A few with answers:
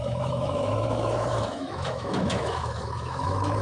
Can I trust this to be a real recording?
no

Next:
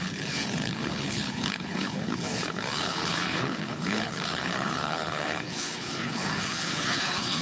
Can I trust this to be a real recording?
no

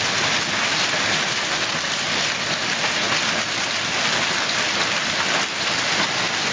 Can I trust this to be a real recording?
yes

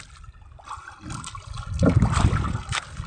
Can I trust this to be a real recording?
yes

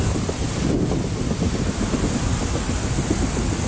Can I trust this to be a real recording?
yes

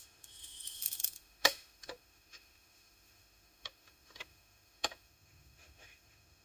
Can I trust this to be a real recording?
no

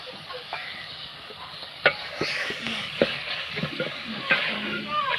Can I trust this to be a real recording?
no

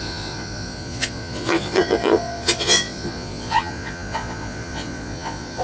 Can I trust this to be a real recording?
no